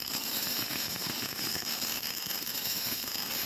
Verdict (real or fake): fake